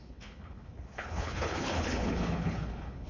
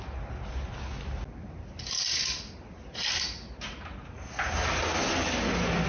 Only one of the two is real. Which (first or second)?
second